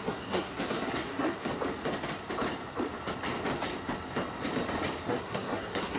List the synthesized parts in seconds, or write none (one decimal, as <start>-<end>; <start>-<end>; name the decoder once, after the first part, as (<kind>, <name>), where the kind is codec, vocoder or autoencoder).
0.0-1.5 (codec, SNAC); 5.1-6.0

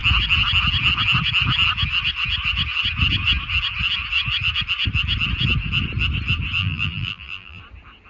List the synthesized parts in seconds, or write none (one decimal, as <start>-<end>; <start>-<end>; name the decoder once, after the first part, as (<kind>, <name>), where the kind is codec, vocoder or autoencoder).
6.6-7.6 (vocoder, BigVGAN v2)

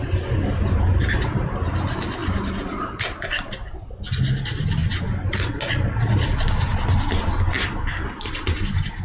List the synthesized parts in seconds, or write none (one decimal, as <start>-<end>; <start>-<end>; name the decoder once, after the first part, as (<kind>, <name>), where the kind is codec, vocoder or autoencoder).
none

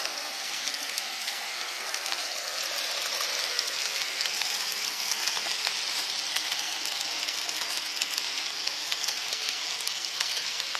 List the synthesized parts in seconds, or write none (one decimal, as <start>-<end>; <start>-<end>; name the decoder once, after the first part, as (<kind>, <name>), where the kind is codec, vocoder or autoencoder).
0.0-2.6 (codec, SNAC); 3.4-5.7; 6.3-10.8

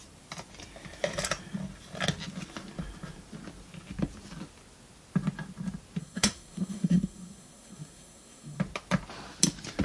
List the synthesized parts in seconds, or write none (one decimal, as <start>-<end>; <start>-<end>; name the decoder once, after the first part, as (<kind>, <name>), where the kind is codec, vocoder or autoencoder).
6.0-8.6 (codec, SNAC)